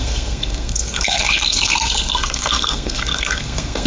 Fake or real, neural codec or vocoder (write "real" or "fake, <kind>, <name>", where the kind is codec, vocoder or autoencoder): fake, codec, SNAC